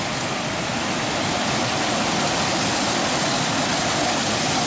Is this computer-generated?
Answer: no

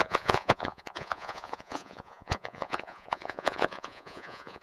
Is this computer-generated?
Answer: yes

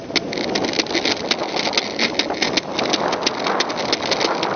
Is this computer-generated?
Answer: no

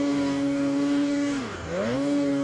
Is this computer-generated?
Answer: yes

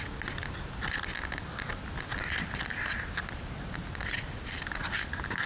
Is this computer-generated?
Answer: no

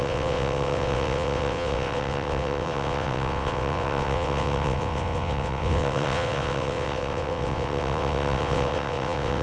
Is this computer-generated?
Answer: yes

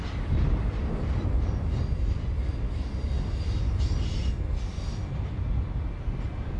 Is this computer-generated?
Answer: no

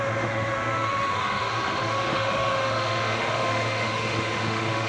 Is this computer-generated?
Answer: yes